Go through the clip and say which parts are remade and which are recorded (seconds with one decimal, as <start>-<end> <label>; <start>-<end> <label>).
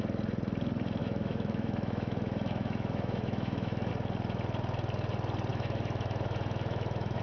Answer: 0.0-1.0 recorded; 1.0-3.9 remade; 3.9-5.5 recorded; 5.5-7.2 remade